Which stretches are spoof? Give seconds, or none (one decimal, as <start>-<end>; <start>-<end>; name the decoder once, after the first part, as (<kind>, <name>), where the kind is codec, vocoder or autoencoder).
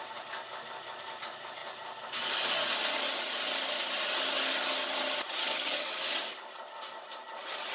5.4-6.1 (codec, DAC)